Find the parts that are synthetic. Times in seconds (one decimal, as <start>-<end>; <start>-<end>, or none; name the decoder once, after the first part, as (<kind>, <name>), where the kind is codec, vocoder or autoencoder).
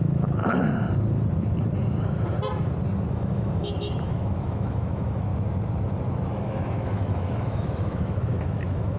0.0-0.4 (autoencoder, DAC-VAE); 3.1-5.3; 6.3-9.0